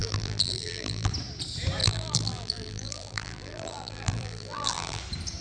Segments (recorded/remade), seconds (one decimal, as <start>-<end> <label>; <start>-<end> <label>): 0.0-1.1 remade; 1.1-1.8 recorded; 1.8-5.0 remade; 5.0-5.4 recorded